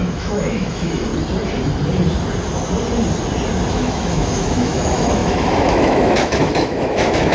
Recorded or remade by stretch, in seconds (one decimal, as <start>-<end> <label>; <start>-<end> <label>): 0.0-1.1 remade; 1.1-3.7 recorded; 3.7-7.3 remade